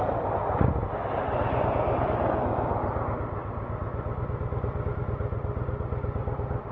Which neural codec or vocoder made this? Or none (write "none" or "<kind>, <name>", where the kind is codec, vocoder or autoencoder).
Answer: none